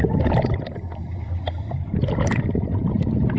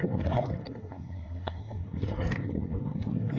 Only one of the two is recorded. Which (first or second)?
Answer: first